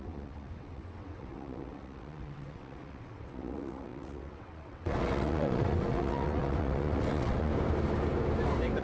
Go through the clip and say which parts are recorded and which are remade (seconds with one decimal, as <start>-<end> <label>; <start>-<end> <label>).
0.0-7.5 remade; 7.5-8.8 recorded